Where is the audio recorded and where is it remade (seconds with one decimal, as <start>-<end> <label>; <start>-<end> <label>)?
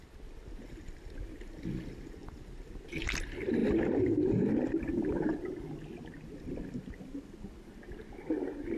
0.0-8.8 recorded